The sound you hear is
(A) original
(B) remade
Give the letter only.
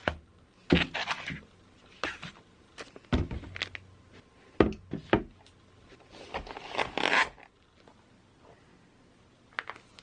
A